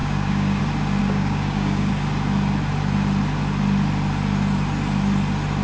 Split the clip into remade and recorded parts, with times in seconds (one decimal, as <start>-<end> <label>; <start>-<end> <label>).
0.0-0.6 remade; 0.6-1.0 recorded; 1.0-1.9 remade; 1.9-5.6 recorded